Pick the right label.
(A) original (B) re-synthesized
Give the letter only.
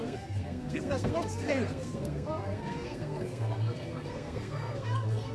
B